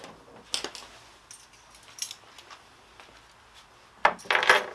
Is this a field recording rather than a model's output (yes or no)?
yes